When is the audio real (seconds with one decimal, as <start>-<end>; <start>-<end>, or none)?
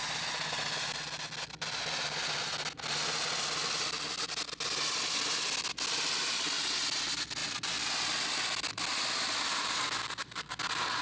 0.0-11.0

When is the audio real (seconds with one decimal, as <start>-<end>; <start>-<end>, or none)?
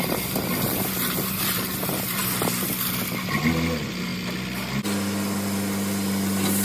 0.0-6.6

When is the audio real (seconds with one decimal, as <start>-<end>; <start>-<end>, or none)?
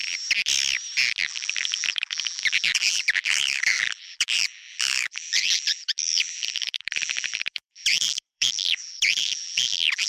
0.0-1.2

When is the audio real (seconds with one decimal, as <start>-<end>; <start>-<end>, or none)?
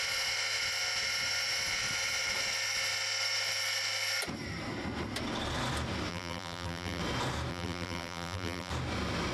0.0-6.1; 7.0-7.5; 8.7-9.3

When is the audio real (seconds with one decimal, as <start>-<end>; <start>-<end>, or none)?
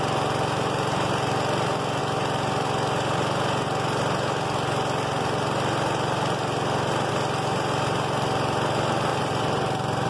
0.0-9.1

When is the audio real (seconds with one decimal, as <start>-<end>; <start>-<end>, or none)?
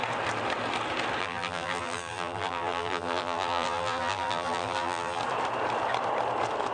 0.0-1.2; 5.2-6.7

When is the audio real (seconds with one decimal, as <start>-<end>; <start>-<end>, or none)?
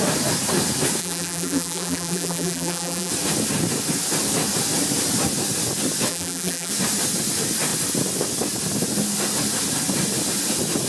0.0-1.0; 3.1-6.1; 6.7-10.9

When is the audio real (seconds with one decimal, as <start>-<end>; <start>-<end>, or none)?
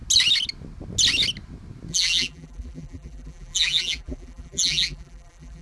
0.0-1.9